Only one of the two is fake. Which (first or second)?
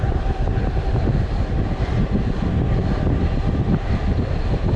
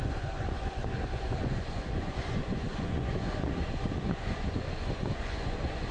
second